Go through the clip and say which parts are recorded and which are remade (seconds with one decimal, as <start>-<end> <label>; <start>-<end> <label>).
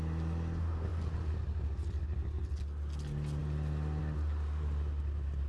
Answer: 0.0-5.5 recorded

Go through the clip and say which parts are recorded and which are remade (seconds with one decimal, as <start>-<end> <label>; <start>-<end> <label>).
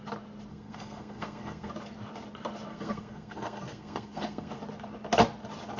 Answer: 0.0-0.5 recorded; 0.5-1.7 remade; 1.7-2.7 recorded; 2.7-4.6 remade; 4.6-5.8 recorded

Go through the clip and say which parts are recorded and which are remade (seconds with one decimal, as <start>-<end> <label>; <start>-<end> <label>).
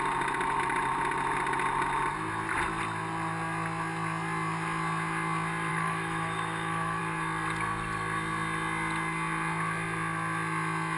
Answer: 0.0-5.7 recorded; 5.7-7.0 remade; 7.0-11.0 recorded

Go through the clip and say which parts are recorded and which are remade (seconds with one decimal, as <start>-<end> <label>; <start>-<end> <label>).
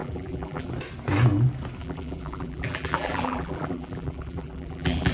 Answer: 0.0-0.7 remade; 0.7-1.8 recorded; 1.8-5.1 remade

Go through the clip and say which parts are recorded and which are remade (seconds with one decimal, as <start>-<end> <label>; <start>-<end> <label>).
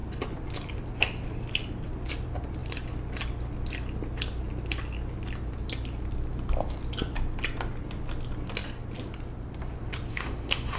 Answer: 0.0-10.1 recorded; 10.1-10.8 remade